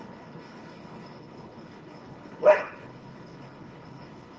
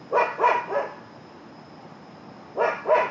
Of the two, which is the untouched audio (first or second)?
second